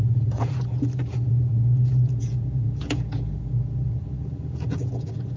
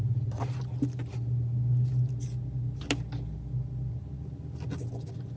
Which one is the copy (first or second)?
first